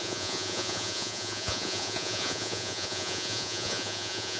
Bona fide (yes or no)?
no